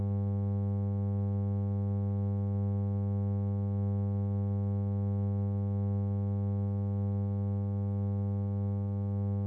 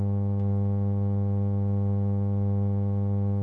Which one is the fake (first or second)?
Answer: second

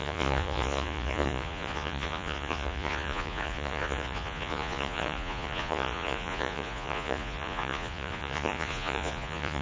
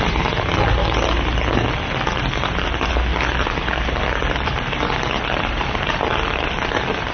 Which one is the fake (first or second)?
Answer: first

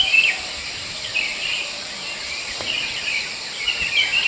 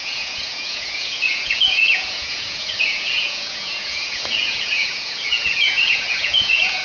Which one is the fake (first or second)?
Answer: second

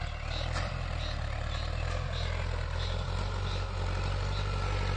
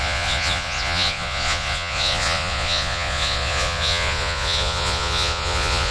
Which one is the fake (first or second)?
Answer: second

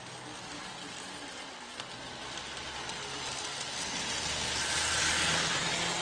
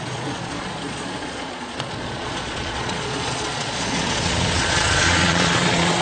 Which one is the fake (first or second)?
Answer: second